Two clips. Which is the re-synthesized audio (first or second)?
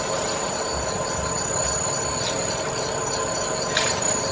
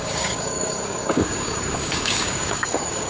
second